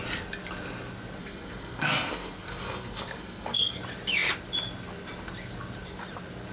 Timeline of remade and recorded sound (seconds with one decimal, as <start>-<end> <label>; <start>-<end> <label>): 0.0-1.2 recorded; 1.2-3.8 remade; 3.8-6.5 recorded